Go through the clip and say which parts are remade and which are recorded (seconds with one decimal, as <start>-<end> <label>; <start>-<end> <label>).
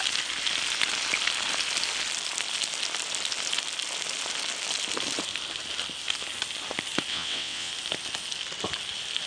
0.0-7.1 recorded; 7.1-7.7 remade; 7.7-9.3 recorded